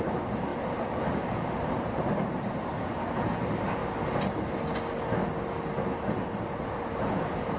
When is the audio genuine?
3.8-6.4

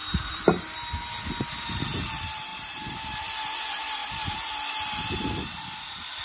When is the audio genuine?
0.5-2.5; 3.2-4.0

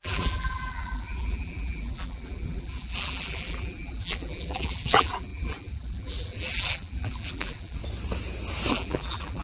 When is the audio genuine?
7.8-8.7

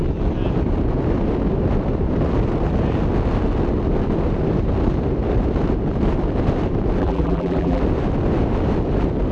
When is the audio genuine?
0.0-7.0; 7.8-9.3

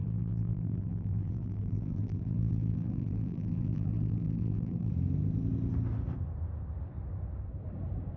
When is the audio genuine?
4.9-8.2